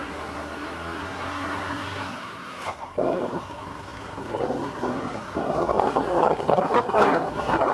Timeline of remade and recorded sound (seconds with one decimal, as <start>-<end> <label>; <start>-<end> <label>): 0.0-7.7 remade